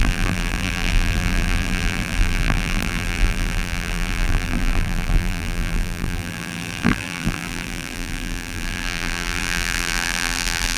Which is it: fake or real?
fake